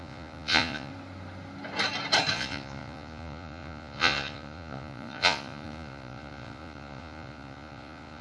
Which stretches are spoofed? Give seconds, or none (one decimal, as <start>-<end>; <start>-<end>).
0.0-0.9; 2.3-8.2